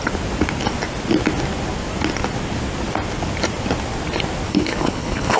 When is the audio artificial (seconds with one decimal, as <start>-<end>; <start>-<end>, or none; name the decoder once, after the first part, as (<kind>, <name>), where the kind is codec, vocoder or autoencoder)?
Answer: 4.5-5.4 (codec, HILCodec)